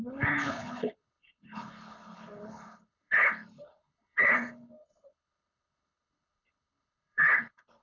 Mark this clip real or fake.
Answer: fake